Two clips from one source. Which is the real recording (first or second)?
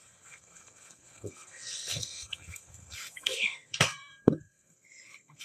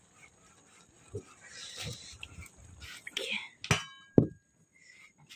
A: second